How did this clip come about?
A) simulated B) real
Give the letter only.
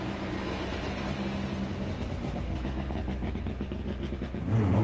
B